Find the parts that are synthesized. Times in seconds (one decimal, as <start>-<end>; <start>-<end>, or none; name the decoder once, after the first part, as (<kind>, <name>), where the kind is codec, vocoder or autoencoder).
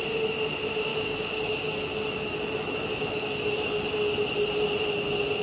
0.9-4.1 (autoencoder, DAC-VAE)